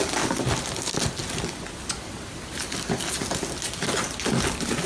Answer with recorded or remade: recorded